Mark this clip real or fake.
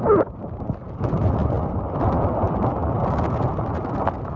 real